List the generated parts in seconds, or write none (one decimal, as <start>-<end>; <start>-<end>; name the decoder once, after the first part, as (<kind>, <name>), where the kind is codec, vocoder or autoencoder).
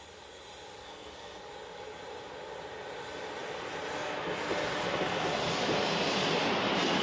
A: 0.8-1.4 (codec, SNAC)